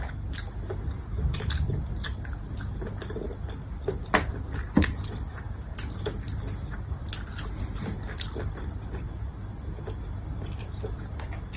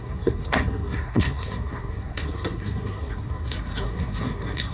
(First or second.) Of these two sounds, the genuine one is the first